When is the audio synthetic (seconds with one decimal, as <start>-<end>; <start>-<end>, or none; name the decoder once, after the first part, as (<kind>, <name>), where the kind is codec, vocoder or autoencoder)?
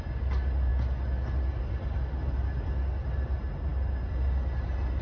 none